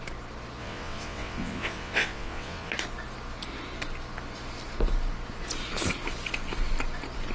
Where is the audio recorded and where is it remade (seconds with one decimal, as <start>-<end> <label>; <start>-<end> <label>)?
0.0-0.6 recorded; 0.6-2.7 remade; 2.7-7.3 recorded